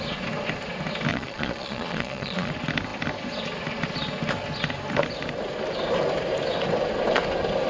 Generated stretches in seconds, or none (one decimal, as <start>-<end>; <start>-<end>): 1.1-2.5